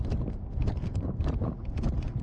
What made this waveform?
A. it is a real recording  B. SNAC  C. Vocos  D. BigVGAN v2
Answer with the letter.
A